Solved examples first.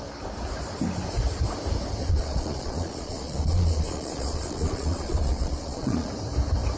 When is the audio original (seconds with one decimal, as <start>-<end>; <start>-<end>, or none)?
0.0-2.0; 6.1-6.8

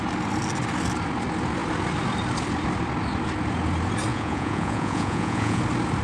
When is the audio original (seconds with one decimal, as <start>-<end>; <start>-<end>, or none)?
0.0-4.1; 5.6-6.0

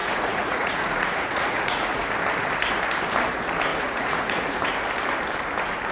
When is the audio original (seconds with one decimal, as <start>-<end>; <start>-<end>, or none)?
2.1-3.7; 4.7-5.9